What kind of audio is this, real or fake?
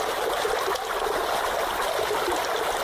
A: real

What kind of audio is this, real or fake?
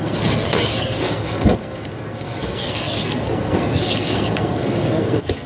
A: fake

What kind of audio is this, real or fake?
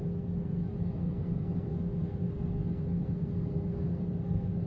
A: fake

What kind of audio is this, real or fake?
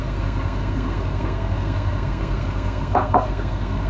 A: fake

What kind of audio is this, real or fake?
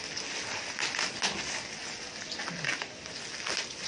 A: real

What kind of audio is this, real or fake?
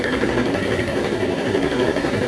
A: fake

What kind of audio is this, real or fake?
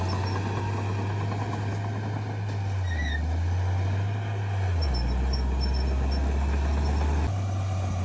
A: real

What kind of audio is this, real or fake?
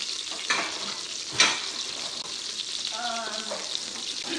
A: real